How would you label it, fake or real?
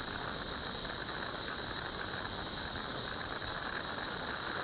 real